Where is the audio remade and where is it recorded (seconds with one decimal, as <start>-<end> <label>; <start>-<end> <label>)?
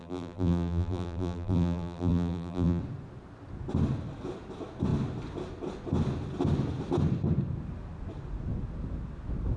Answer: 0.0-2.8 remade; 2.8-9.6 recorded